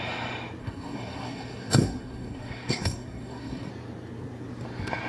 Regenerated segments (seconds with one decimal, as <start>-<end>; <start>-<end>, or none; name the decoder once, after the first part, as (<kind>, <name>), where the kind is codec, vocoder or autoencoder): 0.6-3.7 (codec, SNAC)